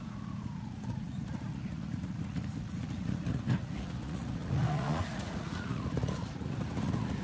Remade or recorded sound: remade